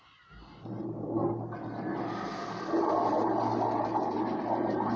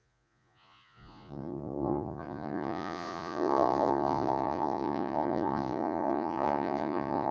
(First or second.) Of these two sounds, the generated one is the second